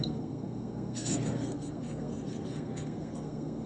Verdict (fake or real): fake